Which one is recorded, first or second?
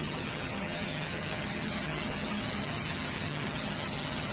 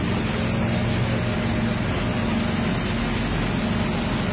second